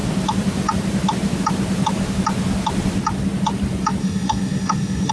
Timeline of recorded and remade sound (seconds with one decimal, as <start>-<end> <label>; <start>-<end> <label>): 0.0-4.0 recorded; 4.0-5.1 remade